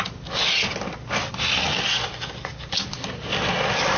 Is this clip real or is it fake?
real